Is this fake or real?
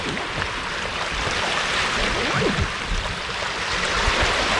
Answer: real